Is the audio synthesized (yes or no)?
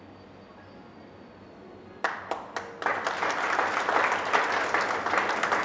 no